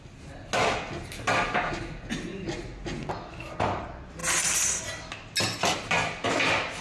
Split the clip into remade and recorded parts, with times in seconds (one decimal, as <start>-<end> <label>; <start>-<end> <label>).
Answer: 0.0-6.8 recorded